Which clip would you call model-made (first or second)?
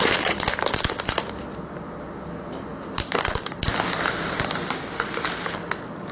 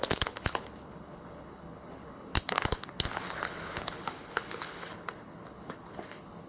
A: second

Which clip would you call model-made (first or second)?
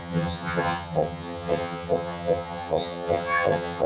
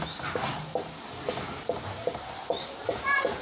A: first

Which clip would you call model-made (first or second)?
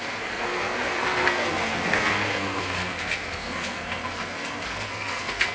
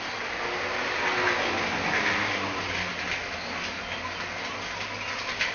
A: first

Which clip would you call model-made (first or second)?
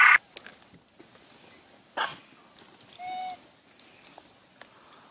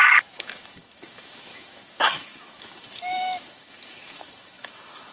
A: second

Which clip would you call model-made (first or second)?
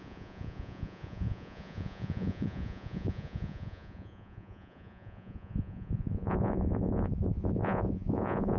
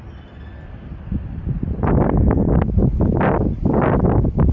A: first